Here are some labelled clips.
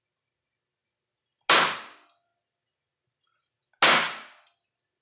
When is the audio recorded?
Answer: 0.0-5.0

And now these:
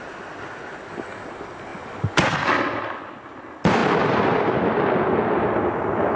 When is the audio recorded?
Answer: 0.0-6.2

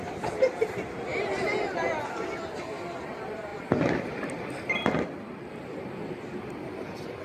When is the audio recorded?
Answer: 0.0-1.1; 2.0-7.2

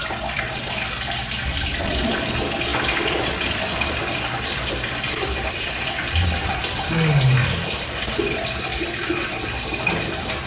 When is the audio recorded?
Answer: 0.0-2.7; 6.9-7.4; 10.0-10.5

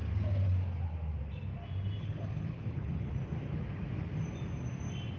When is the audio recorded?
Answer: 0.0-2.0; 3.1-5.2

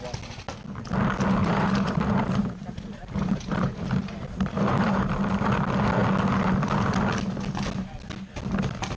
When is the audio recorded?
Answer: 0.0-1.4; 5.4-9.0

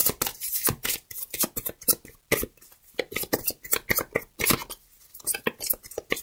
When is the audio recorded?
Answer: 0.0-6.2

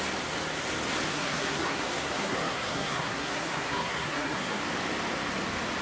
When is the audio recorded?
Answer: 0.0-1.1; 4.6-5.8